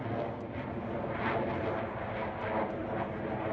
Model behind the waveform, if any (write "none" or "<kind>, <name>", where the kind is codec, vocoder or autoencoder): none